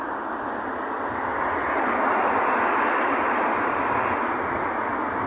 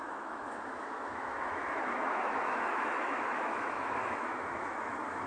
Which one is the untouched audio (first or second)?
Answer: first